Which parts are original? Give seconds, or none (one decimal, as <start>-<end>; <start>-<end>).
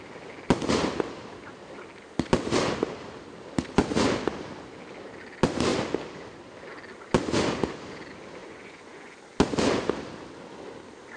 0.0-8.4; 9.2-11.2